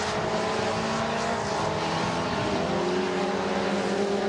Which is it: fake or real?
real